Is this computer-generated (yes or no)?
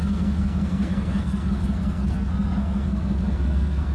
yes